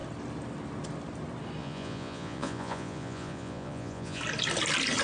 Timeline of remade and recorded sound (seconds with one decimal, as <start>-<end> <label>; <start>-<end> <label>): 0.0-1.6 recorded; 1.6-4.2 remade; 4.2-5.0 recorded